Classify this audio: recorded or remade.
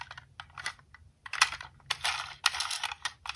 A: recorded